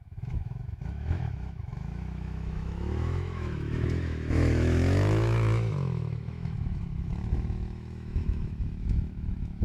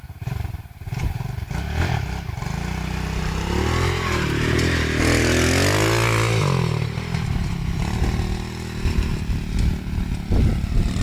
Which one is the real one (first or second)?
second